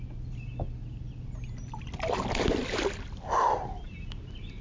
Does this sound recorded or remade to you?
recorded